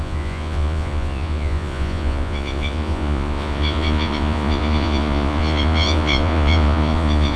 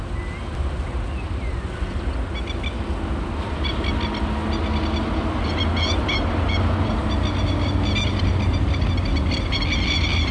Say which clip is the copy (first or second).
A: first